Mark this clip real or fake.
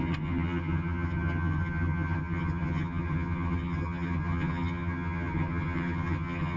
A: fake